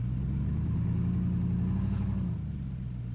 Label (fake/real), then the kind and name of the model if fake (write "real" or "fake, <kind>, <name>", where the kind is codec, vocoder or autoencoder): real